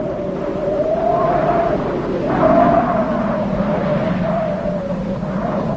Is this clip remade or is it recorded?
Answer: recorded